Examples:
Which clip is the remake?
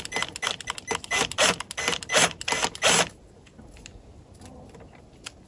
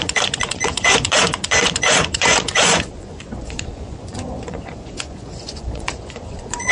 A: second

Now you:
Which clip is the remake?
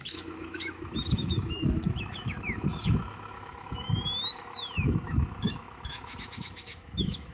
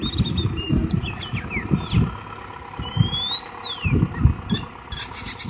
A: first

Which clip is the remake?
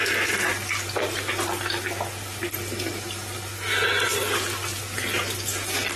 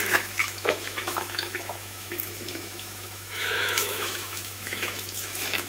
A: second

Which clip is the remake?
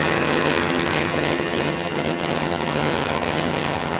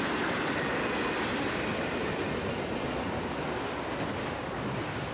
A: first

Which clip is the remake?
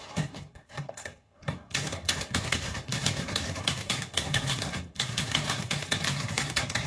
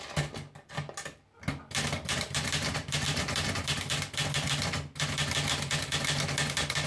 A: first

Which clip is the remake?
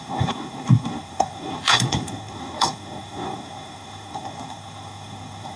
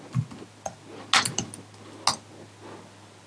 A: first